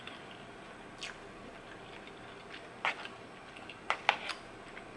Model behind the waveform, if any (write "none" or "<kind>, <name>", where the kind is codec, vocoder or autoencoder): none